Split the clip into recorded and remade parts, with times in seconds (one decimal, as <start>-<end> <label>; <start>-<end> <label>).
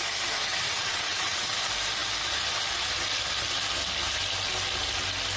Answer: 0.0-0.5 recorded; 0.5-1.5 remade; 1.5-5.4 recorded